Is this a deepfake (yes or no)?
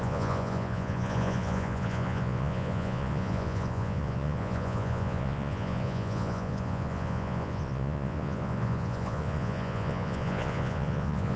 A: yes